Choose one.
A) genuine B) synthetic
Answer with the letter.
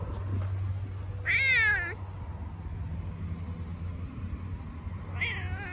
A